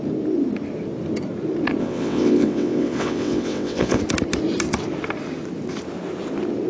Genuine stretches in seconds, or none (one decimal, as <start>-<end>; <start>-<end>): 0.0-1.8; 4.0-6.7